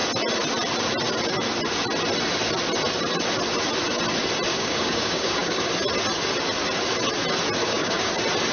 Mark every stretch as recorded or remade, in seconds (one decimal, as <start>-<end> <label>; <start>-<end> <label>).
0.0-4.5 recorded; 4.5-5.7 remade; 5.7-7.6 recorded; 7.6-8.1 remade; 8.1-8.5 recorded